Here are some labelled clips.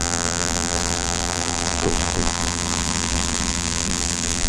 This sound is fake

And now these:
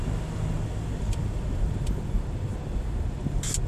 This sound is real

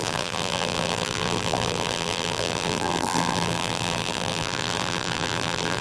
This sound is fake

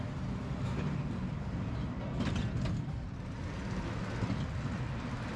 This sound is real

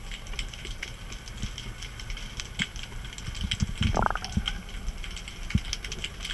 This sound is real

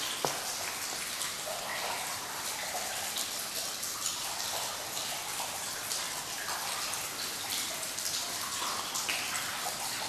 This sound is real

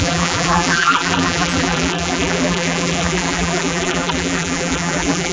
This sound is fake